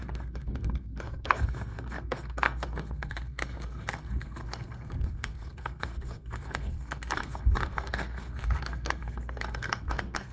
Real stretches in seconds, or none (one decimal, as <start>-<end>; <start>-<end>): none